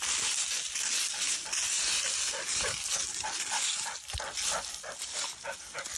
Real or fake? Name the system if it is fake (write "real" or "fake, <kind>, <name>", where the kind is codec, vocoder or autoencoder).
real